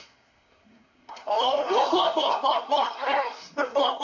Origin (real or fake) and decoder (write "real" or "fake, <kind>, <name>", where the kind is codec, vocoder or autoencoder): fake, codec, SNAC